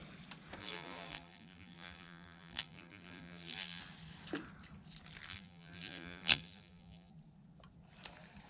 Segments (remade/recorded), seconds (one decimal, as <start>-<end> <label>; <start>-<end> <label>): 0.0-0.6 recorded; 0.6-3.8 remade; 3.8-5.3 recorded; 5.3-7.1 remade; 7.1-8.5 recorded